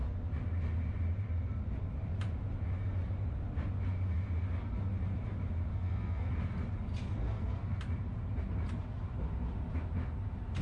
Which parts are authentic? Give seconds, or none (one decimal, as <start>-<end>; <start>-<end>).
0.0-5.7; 6.3-7.2; 7.8-10.6